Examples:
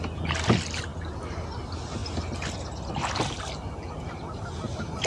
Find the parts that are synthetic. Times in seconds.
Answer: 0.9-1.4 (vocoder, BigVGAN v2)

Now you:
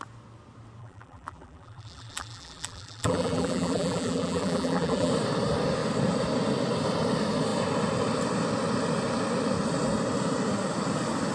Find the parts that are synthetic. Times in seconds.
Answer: 0.8-5.1 (vocoder, BigVGAN v2)